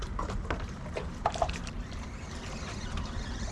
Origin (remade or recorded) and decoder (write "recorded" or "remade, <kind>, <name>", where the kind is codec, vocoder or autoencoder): remade, vocoder, BigVGAN v2